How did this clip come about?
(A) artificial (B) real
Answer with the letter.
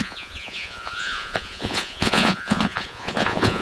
A